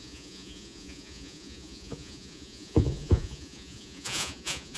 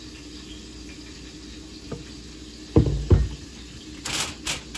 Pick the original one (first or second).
second